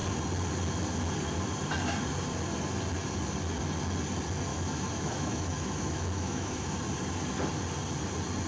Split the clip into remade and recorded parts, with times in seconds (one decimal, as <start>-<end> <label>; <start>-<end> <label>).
0.0-4.5 recorded; 4.5-6.8 remade; 6.8-8.5 recorded